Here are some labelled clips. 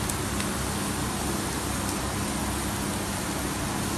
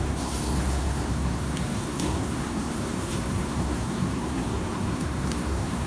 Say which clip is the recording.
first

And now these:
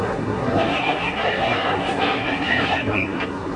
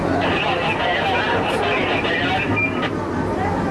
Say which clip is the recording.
second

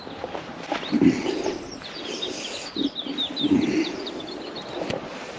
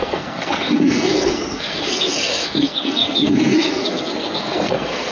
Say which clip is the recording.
first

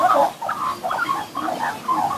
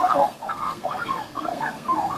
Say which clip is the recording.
first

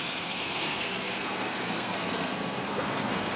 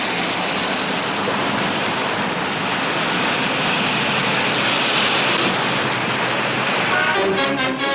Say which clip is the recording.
second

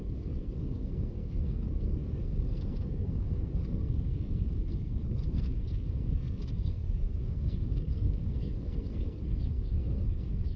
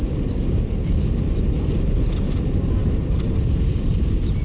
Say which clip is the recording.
second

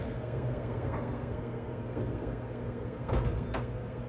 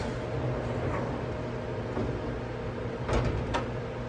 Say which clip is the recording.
second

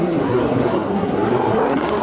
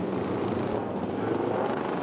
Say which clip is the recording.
second